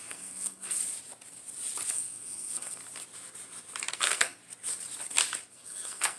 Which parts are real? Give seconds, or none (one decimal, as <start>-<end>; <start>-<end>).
0.8-1.9; 2.8-3.9; 4.4-5.5